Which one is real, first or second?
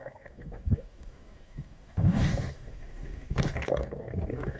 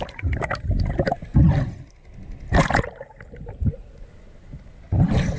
second